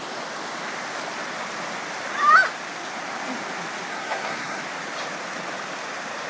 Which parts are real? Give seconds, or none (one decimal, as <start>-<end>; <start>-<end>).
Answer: 0.0-3.9; 4.6-6.3